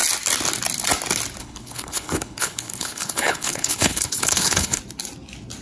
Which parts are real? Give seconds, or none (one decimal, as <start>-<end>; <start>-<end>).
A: 0.0-1.4; 4.8-5.6